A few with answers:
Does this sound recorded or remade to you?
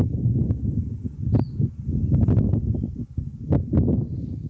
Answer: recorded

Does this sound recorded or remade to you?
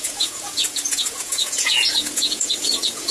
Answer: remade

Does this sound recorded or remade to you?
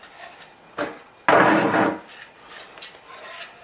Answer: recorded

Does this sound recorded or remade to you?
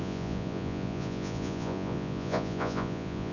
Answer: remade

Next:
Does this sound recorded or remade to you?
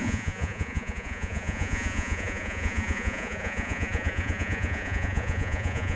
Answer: remade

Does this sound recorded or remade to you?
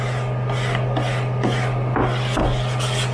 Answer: recorded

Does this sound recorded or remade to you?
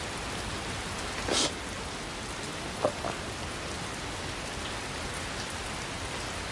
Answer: recorded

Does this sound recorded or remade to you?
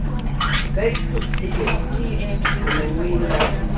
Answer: recorded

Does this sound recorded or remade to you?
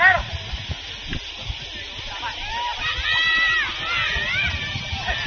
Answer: recorded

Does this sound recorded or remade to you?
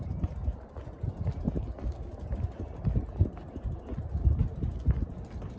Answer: recorded